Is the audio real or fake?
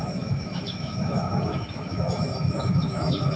fake